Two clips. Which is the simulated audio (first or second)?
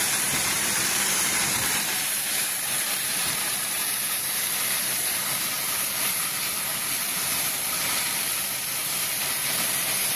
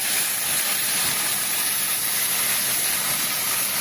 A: first